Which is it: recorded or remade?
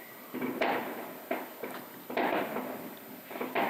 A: recorded